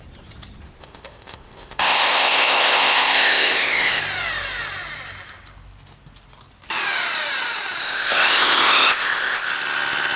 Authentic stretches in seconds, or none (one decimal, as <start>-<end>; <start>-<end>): 0.0-0.8; 4.0-7.8; 9.5-10.2